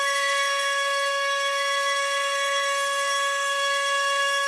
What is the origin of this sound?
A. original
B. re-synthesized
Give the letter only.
B